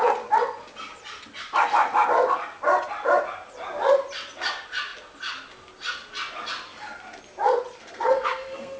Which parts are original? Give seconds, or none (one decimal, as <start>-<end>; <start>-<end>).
0.0-7.8